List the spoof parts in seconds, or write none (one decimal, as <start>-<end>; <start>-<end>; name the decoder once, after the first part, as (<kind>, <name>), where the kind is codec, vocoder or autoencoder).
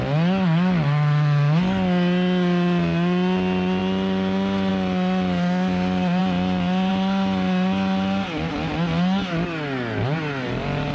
none